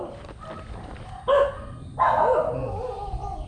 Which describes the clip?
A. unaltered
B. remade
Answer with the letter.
A